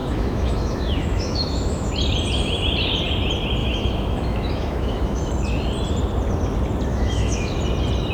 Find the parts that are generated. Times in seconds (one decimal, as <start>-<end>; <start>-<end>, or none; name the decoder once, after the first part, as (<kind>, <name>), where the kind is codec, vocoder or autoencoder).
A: 0.0-1.9 (autoencoder, DAC-VAE); 3.6-5.3; 6.9-7.5